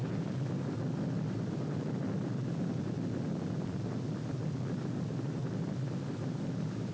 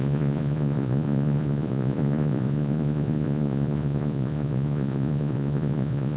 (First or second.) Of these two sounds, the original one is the first